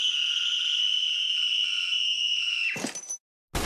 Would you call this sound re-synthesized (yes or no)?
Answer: no